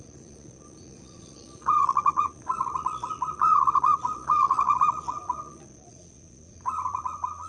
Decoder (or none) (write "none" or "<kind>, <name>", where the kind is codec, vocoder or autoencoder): vocoder, Vocos